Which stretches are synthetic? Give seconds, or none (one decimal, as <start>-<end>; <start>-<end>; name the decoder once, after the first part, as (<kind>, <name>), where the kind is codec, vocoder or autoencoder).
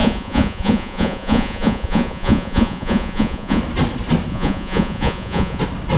0.0-3.6 (vocoder, Vocos); 4.3-5.6